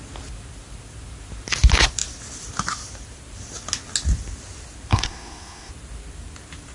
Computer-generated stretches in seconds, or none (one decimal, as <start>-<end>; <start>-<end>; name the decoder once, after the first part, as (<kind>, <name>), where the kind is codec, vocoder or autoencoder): 4.9-5.7 (codec, SNAC)